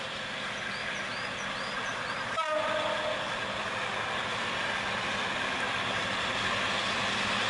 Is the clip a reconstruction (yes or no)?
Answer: no